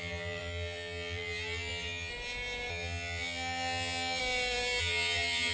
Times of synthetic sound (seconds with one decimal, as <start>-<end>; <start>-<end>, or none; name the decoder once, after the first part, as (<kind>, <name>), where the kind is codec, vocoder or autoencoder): 0.0-2.1 (vocoder, HiFi-GAN); 2.7-4.2; 4.8-5.5